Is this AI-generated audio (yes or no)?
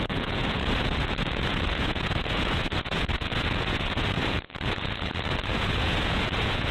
yes